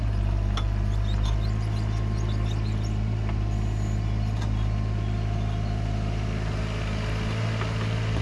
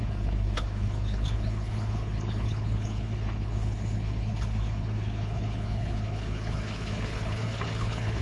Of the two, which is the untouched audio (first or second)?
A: first